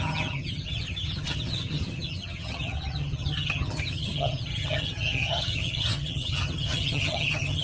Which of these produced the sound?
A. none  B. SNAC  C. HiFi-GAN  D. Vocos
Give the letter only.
C